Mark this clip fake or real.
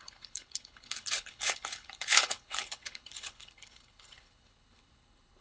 fake